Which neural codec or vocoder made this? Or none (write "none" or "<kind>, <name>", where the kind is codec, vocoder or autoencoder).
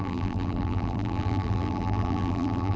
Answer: vocoder, BigVGAN v2